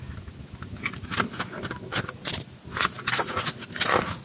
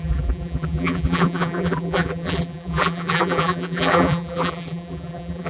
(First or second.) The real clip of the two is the first